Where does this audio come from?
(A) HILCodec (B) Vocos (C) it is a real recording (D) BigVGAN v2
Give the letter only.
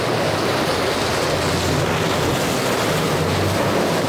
C